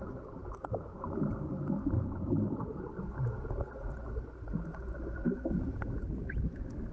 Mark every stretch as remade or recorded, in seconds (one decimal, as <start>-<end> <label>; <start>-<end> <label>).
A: 0.0-6.9 recorded